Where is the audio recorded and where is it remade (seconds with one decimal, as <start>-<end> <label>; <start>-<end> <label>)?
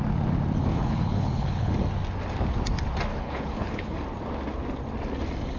0.0-0.7 recorded; 0.7-1.7 remade; 1.7-3.1 recorded; 3.1-4.0 remade; 4.0-5.6 recorded